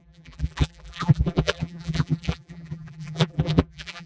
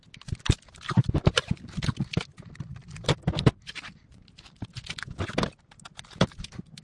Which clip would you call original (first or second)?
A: second